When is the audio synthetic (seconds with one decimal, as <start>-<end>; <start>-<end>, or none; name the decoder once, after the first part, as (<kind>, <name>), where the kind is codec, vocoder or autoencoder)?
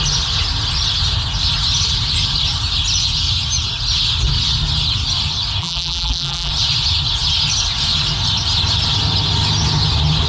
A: 5.6-6.5 (vocoder, BigVGAN v2)